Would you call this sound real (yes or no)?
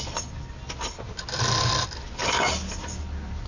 yes